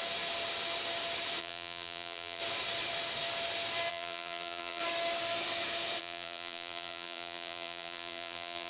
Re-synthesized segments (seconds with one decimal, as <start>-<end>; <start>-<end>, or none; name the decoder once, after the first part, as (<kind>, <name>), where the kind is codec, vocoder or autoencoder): 1.4-2.4 (vocoder, BigVGAN v2); 3.9-4.8; 6.0-8.7